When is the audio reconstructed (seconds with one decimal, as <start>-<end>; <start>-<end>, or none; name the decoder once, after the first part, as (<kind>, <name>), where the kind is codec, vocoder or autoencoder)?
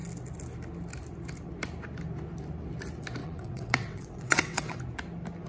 3.2-4.8 (vocoder, WaveNeXt)